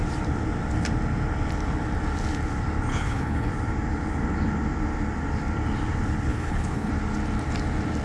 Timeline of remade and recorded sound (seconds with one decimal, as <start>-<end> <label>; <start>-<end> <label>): 0.0-2.9 recorded; 2.9-3.5 remade; 3.5-6.3 recorded; 6.3-6.9 remade; 6.9-8.0 recorded

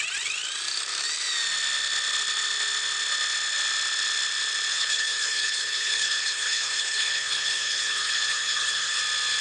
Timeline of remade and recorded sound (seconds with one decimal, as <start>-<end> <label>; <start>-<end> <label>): 0.0-4.7 recorded; 4.7-9.0 remade; 9.0-9.4 recorded

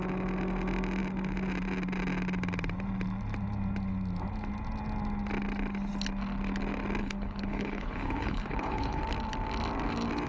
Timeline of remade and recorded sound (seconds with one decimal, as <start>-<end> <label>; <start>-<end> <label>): 0.0-7.0 recorded; 7.0-9.0 remade; 9.0-10.3 recorded

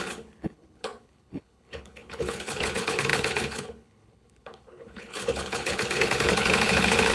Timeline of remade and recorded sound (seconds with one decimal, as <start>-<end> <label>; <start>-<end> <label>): 0.0-7.1 remade

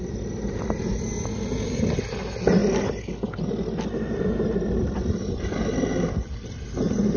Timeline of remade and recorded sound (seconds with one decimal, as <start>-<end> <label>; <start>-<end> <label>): 0.0-7.2 recorded

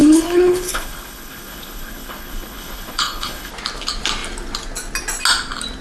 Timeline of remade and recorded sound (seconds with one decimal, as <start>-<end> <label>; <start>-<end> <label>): 0.0-3.5 remade; 3.5-5.8 recorded

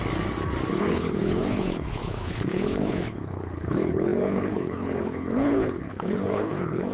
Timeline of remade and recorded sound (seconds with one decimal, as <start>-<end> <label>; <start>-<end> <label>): 0.0-0.7 recorded; 0.7-6.9 remade